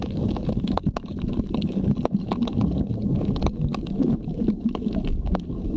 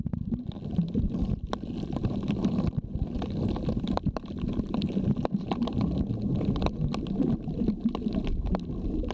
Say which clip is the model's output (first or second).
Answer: first